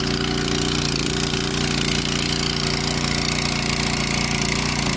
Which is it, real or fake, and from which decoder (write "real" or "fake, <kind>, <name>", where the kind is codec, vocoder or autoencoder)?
real